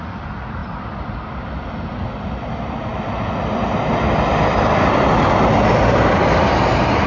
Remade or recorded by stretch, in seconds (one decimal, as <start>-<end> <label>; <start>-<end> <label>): 0.0-7.1 recorded